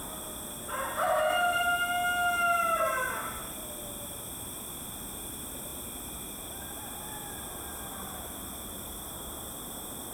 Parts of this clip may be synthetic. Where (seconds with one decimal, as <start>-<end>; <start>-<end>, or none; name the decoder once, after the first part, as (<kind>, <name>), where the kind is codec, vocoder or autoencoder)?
none